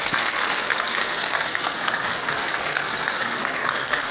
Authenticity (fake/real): fake